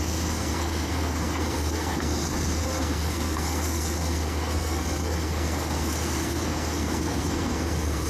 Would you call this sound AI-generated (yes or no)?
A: yes